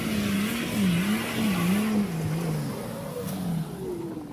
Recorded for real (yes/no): yes